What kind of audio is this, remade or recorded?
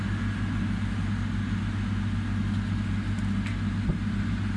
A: recorded